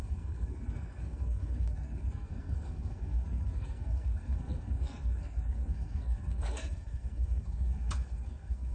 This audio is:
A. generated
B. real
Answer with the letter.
A